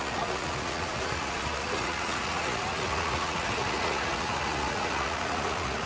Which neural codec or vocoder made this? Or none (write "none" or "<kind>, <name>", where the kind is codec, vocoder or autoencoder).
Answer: vocoder, Vocos